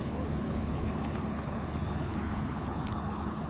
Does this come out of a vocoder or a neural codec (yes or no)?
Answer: yes